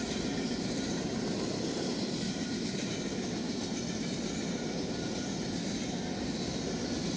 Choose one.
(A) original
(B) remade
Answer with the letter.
A